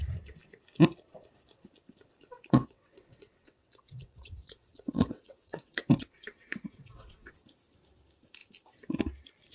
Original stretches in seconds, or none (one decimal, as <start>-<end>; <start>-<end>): 0.0-2.6; 7.3-9.5